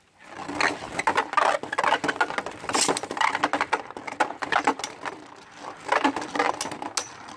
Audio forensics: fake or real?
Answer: real